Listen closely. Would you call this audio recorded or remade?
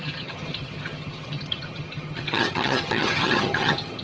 remade